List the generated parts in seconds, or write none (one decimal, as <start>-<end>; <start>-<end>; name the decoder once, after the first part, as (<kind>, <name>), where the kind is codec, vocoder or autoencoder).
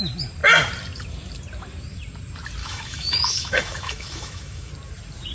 2.6-4.7 (autoencoder, DAC-VAE)